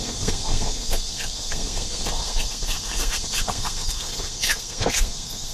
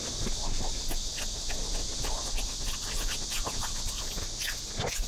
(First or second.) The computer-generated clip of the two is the first